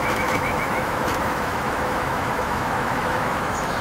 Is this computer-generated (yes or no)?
yes